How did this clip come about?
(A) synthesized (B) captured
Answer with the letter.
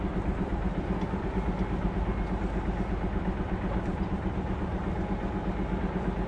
B